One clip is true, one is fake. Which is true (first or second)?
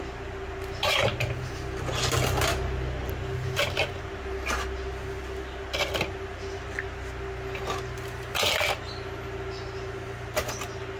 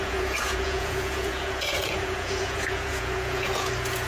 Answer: first